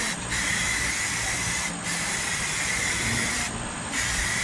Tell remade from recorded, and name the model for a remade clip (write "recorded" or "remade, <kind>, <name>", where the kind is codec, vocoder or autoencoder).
recorded